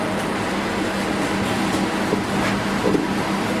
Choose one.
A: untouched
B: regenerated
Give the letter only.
A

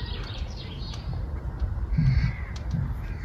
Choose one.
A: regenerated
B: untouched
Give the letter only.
A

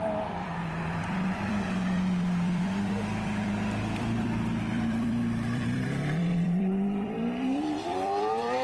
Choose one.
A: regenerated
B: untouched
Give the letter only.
A